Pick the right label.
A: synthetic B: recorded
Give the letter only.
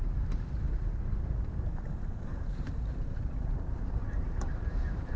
A